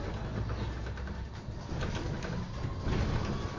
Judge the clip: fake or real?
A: real